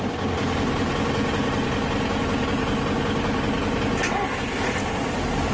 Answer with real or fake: real